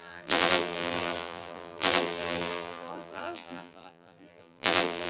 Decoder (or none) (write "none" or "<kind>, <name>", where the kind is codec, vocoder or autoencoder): vocoder, BigVGAN v2